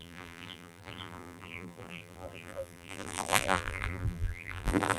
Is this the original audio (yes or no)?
no